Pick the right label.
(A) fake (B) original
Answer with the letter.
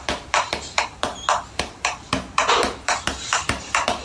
A